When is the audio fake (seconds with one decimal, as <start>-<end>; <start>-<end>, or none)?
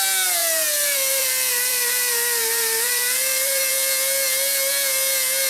0.4-3.7